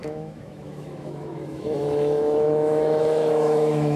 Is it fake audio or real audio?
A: fake